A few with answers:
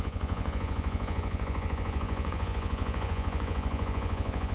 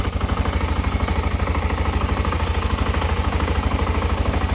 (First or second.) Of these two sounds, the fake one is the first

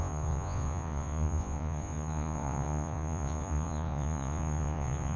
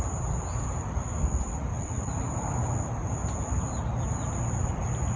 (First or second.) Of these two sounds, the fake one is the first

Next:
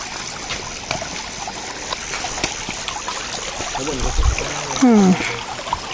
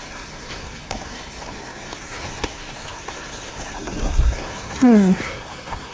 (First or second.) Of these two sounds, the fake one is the second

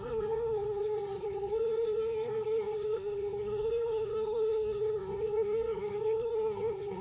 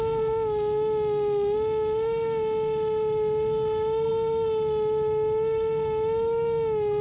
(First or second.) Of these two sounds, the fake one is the first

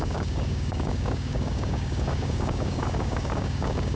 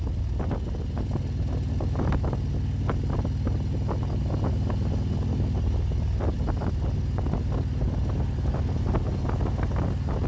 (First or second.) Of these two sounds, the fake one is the first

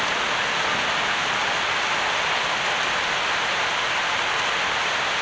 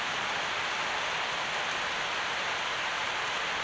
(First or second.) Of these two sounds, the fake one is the second